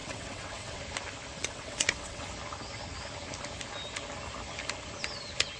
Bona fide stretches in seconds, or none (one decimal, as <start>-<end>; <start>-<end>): 0.8-1.4; 2.2-5.6